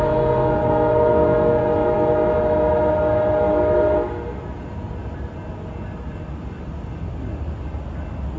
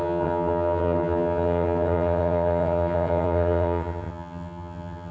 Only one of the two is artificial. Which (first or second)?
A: second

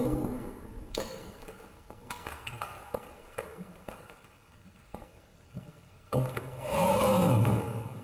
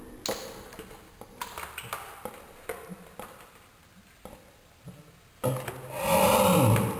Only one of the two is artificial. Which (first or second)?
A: first